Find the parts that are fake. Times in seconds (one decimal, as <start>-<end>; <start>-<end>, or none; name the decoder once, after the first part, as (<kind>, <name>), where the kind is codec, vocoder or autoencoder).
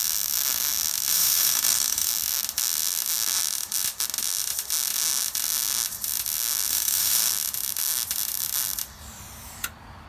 1.1-2.1 (autoencoder, DAC-VAE); 6.7-7.3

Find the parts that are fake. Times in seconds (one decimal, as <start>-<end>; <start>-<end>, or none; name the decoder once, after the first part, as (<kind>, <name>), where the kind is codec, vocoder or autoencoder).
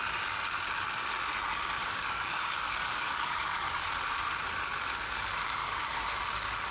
1.8-3.9 (codec, DAC); 5.6-6.2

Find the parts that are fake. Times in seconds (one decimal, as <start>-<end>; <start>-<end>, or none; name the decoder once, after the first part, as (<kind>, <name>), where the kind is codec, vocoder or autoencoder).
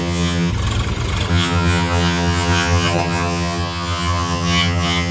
0.0-0.5 (vocoder, HiFi-GAN); 1.3-5.1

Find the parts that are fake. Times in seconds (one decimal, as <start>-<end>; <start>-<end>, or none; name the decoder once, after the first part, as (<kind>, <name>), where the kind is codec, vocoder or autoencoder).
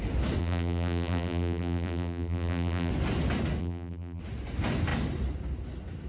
0.4-2.9 (vocoder, BigVGAN v2); 3.6-4.2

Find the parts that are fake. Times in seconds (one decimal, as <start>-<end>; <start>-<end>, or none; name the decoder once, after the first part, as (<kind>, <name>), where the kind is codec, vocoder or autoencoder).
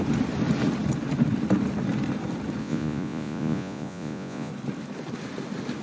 2.6-4.5 (vocoder, Vocos)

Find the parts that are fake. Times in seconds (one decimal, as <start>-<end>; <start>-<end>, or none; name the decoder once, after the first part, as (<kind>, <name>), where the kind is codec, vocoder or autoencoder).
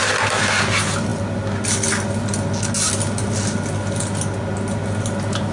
none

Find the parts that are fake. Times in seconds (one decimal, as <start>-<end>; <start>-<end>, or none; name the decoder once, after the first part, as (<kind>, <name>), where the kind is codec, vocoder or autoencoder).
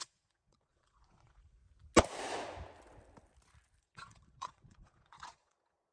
0.0-1.6 (vocoder, Vocos); 3.8-5.9